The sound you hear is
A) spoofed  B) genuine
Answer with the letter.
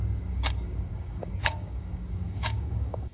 A